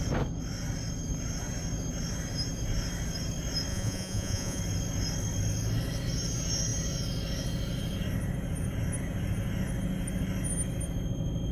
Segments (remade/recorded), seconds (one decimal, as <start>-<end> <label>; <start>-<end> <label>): 0.0-3.7 recorded; 3.7-4.6 remade; 4.6-11.5 recorded